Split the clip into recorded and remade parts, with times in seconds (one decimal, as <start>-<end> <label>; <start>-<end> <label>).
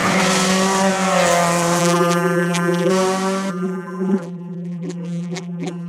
0.0-1.8 recorded; 1.8-2.9 remade; 2.9-3.5 recorded; 3.5-5.9 remade